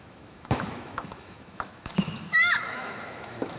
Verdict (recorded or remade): remade